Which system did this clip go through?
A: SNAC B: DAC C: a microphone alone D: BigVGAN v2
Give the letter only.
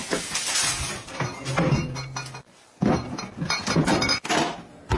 C